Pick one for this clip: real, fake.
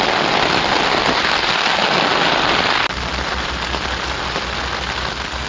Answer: real